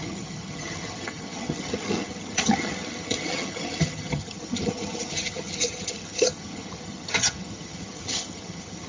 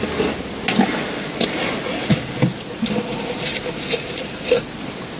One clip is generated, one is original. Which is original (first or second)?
second